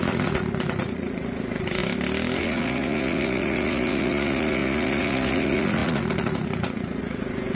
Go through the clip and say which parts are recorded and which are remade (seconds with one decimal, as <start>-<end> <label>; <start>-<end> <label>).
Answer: 0.0-1.8 remade; 1.8-2.4 recorded; 2.4-7.5 remade